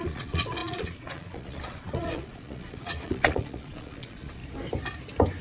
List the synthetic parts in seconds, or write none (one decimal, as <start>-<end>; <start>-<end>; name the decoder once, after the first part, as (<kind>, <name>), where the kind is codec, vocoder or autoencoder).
0.0-4.4 (vocoder, Vocos)